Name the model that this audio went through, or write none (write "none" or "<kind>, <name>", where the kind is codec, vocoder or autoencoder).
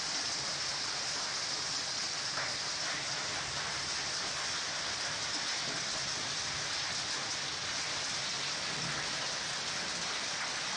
none